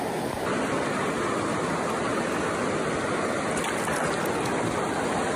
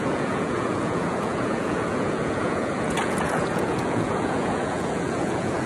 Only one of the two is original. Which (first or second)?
first